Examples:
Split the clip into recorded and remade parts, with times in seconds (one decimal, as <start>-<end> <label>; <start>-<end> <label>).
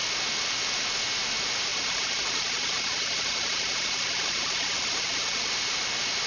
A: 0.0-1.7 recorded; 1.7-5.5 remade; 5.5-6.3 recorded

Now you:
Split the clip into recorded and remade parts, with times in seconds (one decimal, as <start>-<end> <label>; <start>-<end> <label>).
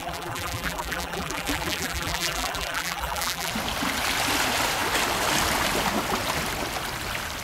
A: 0.0-3.5 remade; 3.5-7.4 recorded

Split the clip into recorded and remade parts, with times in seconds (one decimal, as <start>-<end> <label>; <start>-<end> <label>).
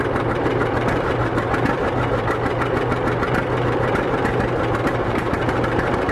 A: 0.0-1.2 remade; 1.2-4.9 recorded; 4.9-6.1 remade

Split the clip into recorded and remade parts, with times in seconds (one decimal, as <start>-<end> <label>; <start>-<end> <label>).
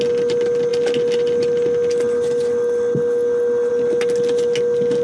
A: 0.0-5.0 recorded